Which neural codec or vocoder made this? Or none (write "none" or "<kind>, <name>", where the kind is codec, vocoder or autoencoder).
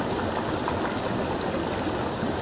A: none